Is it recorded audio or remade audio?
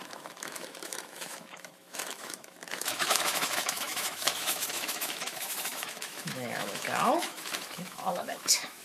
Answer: remade